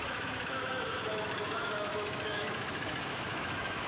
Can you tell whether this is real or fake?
fake